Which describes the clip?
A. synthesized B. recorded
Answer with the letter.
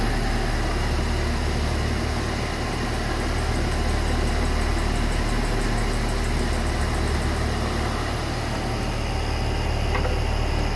B